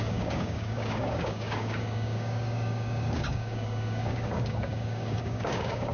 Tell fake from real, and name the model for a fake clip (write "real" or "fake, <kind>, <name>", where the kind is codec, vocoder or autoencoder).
fake, codec, DAC